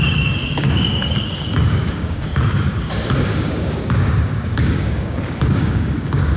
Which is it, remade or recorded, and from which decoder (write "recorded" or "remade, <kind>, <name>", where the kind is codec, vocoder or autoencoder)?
remade, codec, DAC